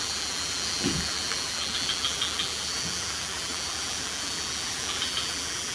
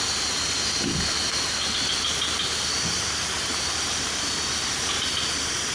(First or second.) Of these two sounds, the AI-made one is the first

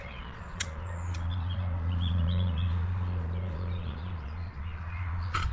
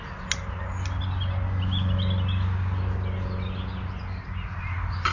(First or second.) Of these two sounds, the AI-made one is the first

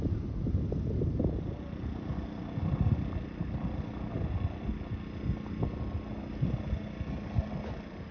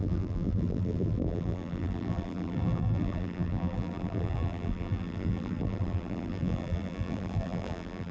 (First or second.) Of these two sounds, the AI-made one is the second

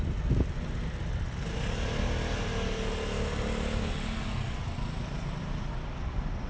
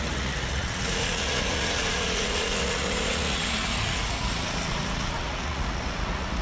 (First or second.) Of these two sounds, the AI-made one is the second